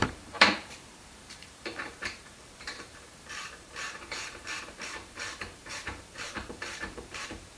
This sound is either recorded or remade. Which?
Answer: remade